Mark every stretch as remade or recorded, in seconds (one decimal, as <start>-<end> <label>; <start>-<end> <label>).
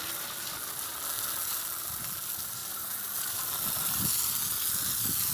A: 0.0-5.3 recorded